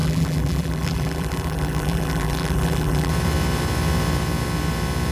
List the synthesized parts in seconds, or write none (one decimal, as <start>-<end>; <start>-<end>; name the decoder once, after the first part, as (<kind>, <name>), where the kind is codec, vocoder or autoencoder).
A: 0.0-3.1 (vocoder, BigVGAN v2)